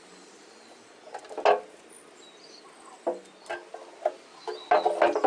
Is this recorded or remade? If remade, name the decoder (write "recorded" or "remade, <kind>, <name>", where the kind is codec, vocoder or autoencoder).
recorded